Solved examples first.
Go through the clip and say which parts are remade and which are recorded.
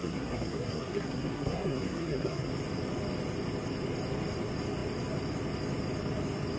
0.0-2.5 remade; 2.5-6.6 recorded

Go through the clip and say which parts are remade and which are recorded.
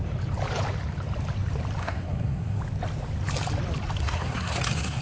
0.0-1.8 recorded; 1.8-2.6 remade; 2.6-4.0 recorded; 4.0-5.0 remade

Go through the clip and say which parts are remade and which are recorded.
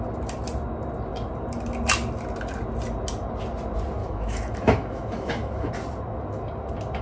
0.0-4.0 recorded; 4.0-5.7 remade; 5.7-7.0 recorded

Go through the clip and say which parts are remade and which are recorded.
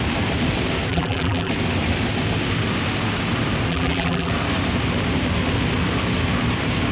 0.0-0.9 recorded; 0.9-1.5 remade; 1.5-3.7 recorded; 3.7-4.3 remade; 4.3-6.9 recorded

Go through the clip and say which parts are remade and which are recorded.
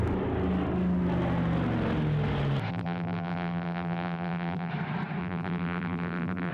0.0-2.7 recorded; 2.7-4.7 remade; 4.7-5.2 recorded; 5.2-6.5 remade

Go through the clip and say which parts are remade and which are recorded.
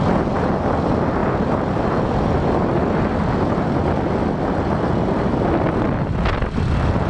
0.0-7.1 recorded